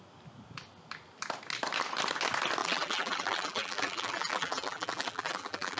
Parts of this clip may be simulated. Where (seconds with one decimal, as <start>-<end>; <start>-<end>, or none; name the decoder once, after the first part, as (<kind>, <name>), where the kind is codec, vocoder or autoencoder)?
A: 2.6-5.8 (vocoder, BigVGAN v2)

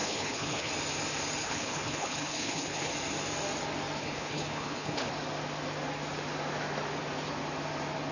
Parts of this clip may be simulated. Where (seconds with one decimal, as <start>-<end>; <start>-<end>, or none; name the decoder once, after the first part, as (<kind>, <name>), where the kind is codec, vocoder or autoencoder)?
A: 0.0-0.7 (codec, HILCodec); 1.4-2.9; 4.0-5.1

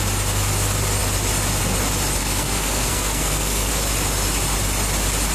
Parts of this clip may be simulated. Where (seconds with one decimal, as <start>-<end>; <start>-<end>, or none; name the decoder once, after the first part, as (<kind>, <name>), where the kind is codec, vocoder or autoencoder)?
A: 2.2-3.7 (codec, SNAC)

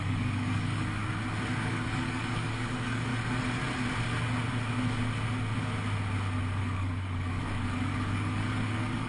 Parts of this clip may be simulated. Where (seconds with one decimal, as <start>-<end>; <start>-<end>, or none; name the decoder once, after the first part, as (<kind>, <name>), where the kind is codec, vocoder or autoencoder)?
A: 0.0-1.0 (codec, DAC); 1.6-3.1; 6.6-9.1

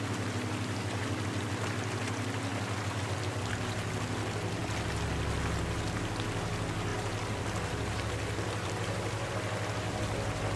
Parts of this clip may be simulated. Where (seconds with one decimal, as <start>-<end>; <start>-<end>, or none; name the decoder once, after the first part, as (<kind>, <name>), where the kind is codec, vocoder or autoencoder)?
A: 6.9-9.3 (vocoder, BigVGAN v2)